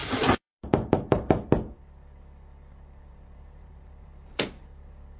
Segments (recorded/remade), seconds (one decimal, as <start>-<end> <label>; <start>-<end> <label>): 0.0-1.2 remade; 1.2-3.1 recorded; 3.1-4.6 remade; 4.6-5.2 recorded